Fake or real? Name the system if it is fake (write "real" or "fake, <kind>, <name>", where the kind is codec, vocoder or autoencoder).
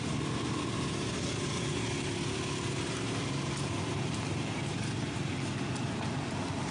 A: real